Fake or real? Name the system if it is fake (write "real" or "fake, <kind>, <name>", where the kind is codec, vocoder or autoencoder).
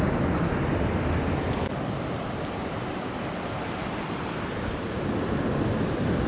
real